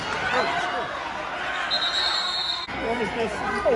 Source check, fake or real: real